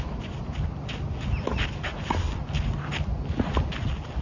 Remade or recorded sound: recorded